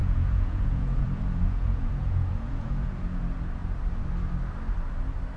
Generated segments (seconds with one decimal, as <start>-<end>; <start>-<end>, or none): 0.0-3.2